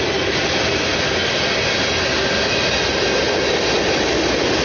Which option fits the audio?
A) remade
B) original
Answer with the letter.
B